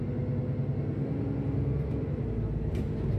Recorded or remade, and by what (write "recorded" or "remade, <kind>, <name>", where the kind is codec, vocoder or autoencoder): recorded